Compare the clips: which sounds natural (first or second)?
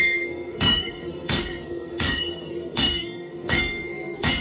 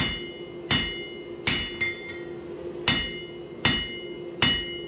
second